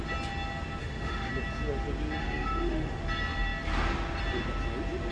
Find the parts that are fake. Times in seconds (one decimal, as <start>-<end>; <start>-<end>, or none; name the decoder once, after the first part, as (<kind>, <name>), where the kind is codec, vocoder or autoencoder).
0.8-1.3 (autoencoder, DAC-VAE); 2.2-3.0